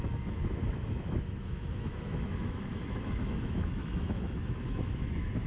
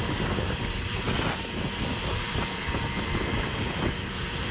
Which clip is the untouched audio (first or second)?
second